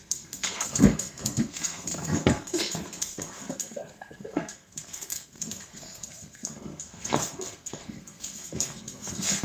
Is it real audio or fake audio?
fake